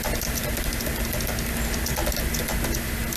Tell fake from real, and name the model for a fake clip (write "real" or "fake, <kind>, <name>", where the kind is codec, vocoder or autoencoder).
real